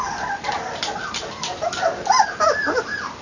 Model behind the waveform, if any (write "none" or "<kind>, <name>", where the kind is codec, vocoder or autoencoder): vocoder, BigVGAN v2